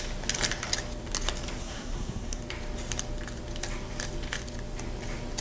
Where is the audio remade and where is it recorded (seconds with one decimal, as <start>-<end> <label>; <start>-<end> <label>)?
0.0-1.6 recorded; 1.6-2.4 remade; 2.4-5.4 recorded